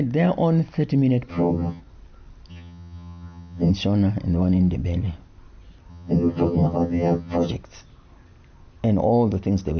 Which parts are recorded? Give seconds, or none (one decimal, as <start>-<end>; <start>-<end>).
0.0-1.3; 1.8-2.5; 3.7-5.9; 7.5-9.8